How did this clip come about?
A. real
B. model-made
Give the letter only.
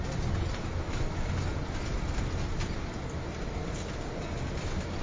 A